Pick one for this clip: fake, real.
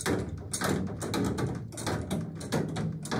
real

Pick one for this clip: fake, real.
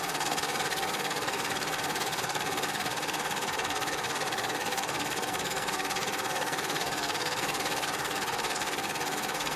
fake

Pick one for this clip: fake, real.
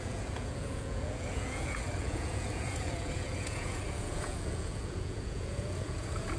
fake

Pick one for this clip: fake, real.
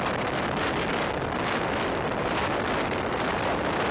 real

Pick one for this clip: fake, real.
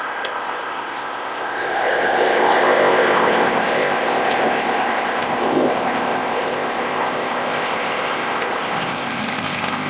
fake